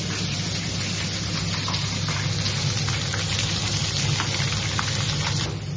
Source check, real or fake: real